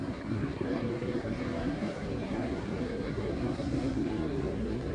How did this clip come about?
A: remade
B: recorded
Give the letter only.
A